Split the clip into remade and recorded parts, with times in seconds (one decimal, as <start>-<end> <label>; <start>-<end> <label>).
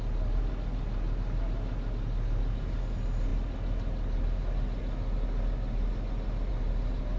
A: 0.0-7.2 recorded